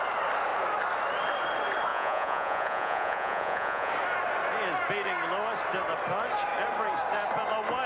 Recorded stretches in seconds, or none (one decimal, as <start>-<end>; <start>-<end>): 0.0-1.9; 3.9-7.9